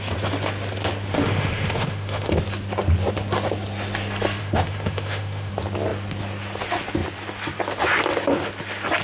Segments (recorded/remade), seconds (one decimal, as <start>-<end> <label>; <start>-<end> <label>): 0.0-1.1 recorded; 1.1-2.4 remade; 2.4-4.4 recorded; 4.4-5.5 remade; 5.5-9.0 recorded